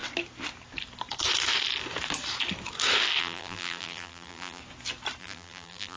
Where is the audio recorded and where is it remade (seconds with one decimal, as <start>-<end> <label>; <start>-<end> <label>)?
0.0-3.2 recorded; 3.2-4.6 remade; 4.6-5.2 recorded; 5.2-6.0 remade